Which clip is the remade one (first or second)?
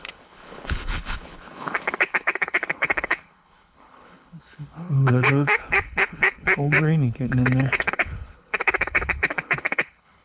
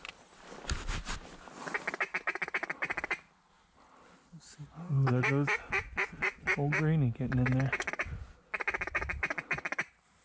first